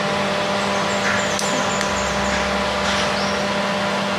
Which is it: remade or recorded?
recorded